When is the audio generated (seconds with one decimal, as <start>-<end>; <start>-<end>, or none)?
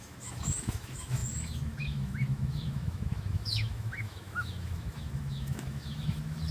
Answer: 0.0-6.5